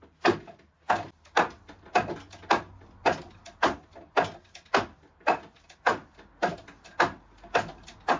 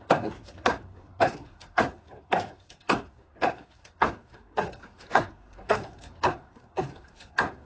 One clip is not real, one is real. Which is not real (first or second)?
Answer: second